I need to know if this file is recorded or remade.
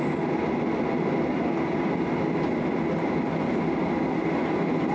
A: recorded